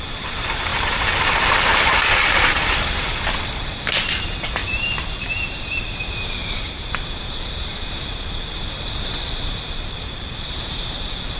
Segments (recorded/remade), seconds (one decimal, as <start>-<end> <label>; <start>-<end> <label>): 0.0-11.4 remade